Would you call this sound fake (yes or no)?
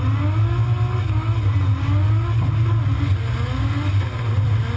no